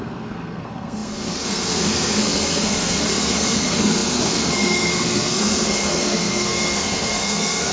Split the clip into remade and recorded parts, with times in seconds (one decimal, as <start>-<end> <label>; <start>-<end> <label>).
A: 0.0-7.7 remade